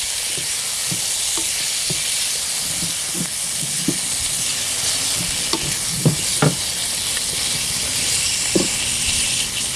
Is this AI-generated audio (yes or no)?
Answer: no